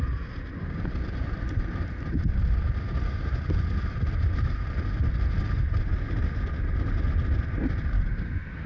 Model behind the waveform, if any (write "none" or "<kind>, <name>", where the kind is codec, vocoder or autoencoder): none